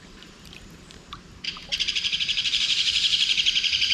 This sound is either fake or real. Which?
fake